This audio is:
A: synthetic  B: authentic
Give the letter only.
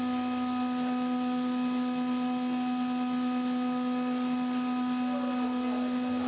B